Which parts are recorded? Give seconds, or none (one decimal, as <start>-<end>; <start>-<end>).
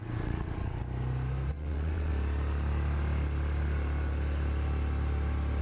0.8-1.5; 2.1-5.6